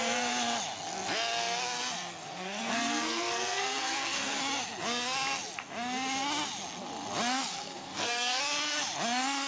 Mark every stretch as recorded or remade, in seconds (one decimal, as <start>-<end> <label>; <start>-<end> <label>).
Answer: 0.0-2.2 recorded; 2.2-4.4 remade; 4.4-7.5 recorded; 7.5-8.4 remade; 8.4-9.5 recorded